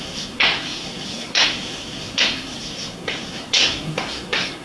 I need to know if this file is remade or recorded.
remade